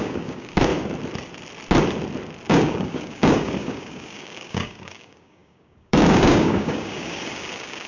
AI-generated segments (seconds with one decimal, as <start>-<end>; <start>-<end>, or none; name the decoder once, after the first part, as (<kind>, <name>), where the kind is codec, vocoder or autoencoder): 0.0-0.7 (codec, DAC); 2.5-7.9